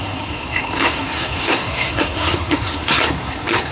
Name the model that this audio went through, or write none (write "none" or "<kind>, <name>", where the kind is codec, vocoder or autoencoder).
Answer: codec, SNAC